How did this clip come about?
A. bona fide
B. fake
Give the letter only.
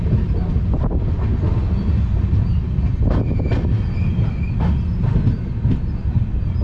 A